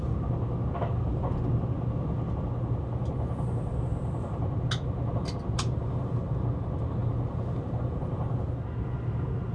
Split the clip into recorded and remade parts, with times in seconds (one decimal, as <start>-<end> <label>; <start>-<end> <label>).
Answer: 0.0-9.5 recorded